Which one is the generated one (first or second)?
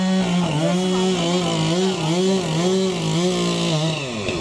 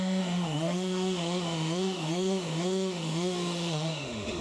second